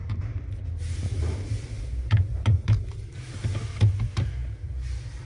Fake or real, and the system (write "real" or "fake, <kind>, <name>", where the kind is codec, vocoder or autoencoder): real